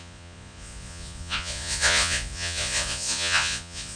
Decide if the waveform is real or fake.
fake